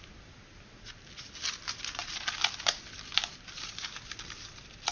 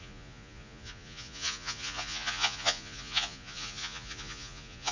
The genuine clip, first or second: first